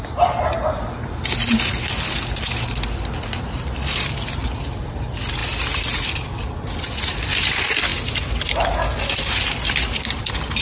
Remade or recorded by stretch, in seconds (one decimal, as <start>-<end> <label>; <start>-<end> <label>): 0.0-10.6 recorded